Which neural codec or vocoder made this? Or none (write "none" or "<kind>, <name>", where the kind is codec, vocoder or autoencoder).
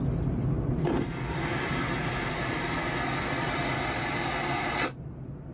none